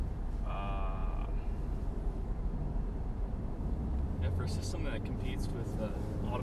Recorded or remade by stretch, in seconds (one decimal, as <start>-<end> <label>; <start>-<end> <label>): 0.0-1.0 recorded; 1.0-4.4 remade; 4.4-6.4 recorded